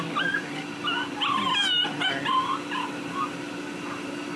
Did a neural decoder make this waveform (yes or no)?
no